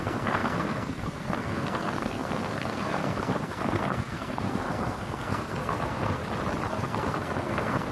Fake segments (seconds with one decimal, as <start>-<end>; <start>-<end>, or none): 0.0-6.2; 6.7-7.9